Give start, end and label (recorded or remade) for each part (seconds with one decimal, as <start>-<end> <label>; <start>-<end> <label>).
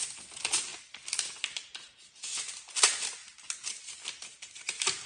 0.0-5.1 recorded